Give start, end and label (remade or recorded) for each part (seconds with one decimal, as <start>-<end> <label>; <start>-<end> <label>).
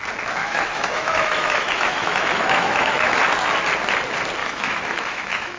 0.0-0.4 recorded; 0.4-3.2 remade; 3.2-4.4 recorded; 4.4-5.6 remade